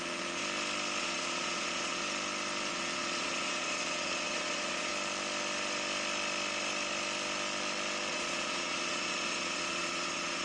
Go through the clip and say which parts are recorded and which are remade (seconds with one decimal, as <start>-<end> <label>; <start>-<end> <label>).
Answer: 0.0-0.4 remade; 0.4-1.0 recorded; 1.0-2.0 remade; 2.0-2.7 recorded; 2.7-4.9 remade; 4.9-8.1 recorded; 8.1-10.4 remade